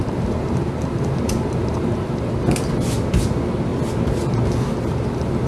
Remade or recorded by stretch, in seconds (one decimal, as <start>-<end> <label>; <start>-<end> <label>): 0.0-3.7 remade; 3.7-4.8 recorded; 4.8-5.5 remade